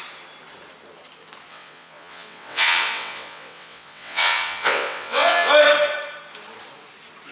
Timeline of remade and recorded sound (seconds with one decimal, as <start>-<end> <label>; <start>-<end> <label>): 0.0-1.5 recorded; 1.5-5.5 remade; 5.5-7.3 recorded